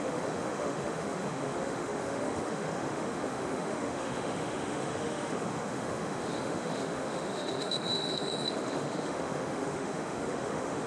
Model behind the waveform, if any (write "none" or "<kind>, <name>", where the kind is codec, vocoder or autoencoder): autoencoder, DAC-VAE